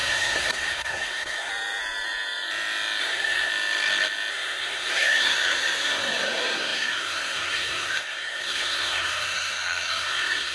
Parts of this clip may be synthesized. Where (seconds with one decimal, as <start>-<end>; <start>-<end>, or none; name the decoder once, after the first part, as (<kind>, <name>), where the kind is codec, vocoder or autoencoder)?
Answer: 0.0-1.5 (codec, SNAC); 3.0-3.5; 4.3-10.5